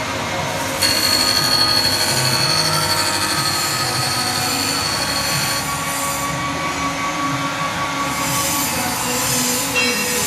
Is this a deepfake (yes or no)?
no